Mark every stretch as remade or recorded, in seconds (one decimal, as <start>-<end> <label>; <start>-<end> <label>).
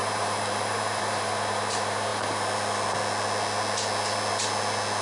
0.0-1.3 remade; 1.3-5.0 recorded